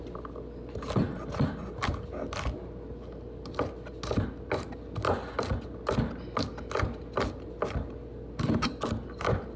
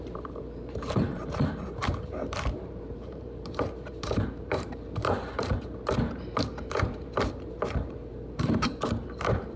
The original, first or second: first